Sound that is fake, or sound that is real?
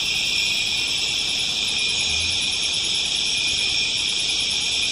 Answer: real